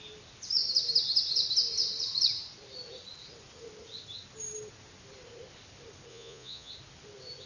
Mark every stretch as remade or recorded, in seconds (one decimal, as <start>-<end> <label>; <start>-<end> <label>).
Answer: 0.0-6.1 recorded; 6.1-6.7 remade; 6.7-7.5 recorded